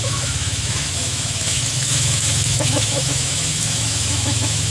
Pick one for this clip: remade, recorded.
remade